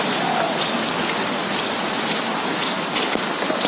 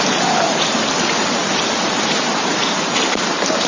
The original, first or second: first